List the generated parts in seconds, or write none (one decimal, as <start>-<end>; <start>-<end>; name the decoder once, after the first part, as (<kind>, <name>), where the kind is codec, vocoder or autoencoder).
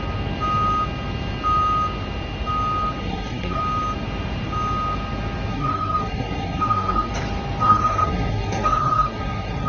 3.0-3.6 (codec, SNAC); 5.5-7.1; 7.6-9.7